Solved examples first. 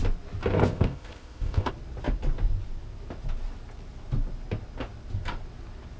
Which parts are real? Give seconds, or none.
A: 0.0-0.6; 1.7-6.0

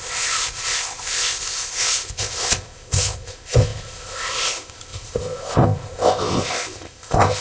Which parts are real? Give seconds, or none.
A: none

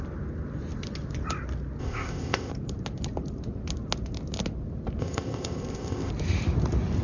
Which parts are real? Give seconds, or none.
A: 0.0-1.8; 2.5-5.0; 6.1-7.0